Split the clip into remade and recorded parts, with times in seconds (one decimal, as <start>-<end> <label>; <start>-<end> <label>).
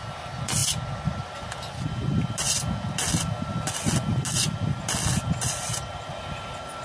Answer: 0.0-6.8 recorded